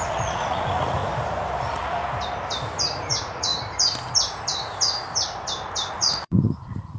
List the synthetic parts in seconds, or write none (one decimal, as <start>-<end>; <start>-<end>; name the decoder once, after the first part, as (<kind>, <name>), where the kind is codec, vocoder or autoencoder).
0.0-1.0 (vocoder, Vocos); 1.6-2.0; 3.0-3.5; 5.9-7.0